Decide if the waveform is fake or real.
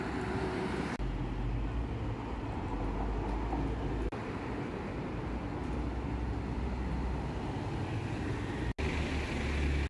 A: real